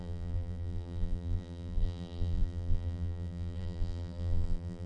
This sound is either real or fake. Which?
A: fake